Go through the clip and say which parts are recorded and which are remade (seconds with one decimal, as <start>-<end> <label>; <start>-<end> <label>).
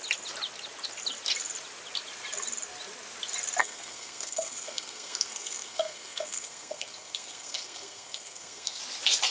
0.0-3.6 recorded; 3.6-8.8 remade; 8.8-9.3 recorded